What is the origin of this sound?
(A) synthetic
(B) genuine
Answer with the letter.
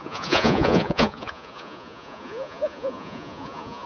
A